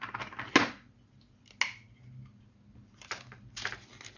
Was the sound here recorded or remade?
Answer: recorded